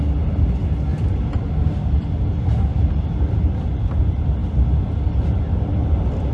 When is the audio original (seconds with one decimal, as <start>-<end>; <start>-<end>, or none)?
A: 0.0-6.3

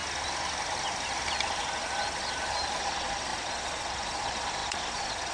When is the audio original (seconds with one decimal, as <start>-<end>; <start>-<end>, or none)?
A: 0.0-2.8

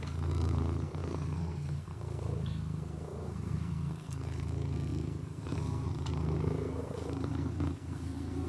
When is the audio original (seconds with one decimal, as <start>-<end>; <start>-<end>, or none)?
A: none

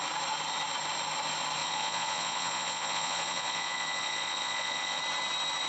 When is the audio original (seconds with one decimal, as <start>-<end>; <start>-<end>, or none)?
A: 0.0-1.6; 5.0-5.7